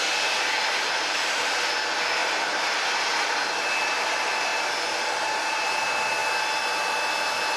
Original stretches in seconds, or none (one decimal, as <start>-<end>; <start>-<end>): 0.0-2.2; 2.8-7.6